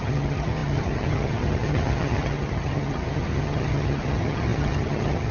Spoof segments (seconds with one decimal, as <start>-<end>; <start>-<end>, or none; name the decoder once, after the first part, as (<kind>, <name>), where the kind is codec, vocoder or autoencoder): 0.0-5.3 (vocoder, HiFi-GAN)